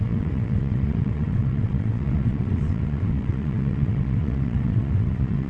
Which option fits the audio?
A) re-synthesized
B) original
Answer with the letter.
A